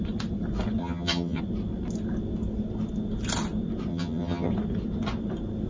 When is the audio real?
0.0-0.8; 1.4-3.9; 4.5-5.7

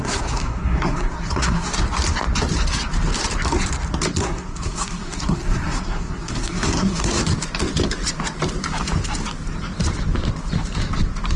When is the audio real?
1.7-4.2; 7.2-11.4

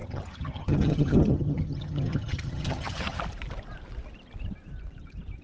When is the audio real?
3.2-5.4

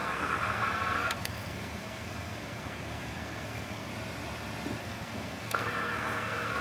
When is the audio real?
3.9-4.8

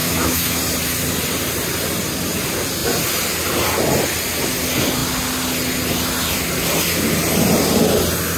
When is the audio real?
0.6-8.4

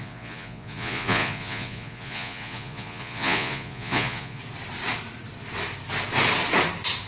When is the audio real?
4.4-7.1

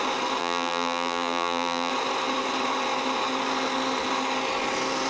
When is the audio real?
0.0-0.4; 1.9-5.1

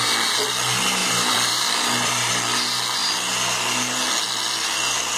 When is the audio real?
0.0-1.0; 2.3-3.0; 3.8-5.2